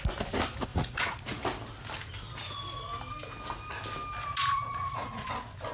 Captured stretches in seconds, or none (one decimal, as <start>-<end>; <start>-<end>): 0.0-0.7; 1.4-4.3; 5.3-5.7